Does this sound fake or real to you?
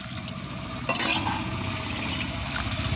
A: fake